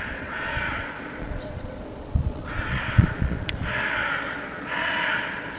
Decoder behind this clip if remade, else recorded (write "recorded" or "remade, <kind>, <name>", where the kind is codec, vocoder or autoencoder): remade, vocoder, Vocos